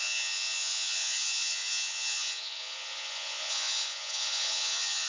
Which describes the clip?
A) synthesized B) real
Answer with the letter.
A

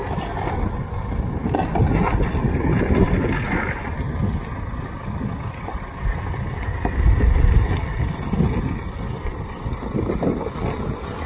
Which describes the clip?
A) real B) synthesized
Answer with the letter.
A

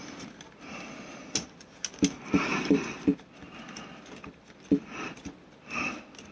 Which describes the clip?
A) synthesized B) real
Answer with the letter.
B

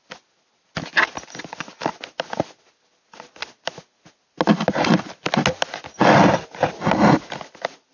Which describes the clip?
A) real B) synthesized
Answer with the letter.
A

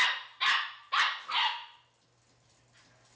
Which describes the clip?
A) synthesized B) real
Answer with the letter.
B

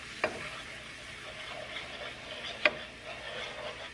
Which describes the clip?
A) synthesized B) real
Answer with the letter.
B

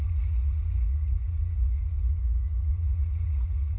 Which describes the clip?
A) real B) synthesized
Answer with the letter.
B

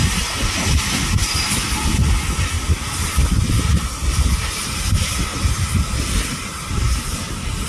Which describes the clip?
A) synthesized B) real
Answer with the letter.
B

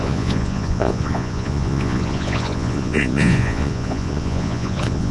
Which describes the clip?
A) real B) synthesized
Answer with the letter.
B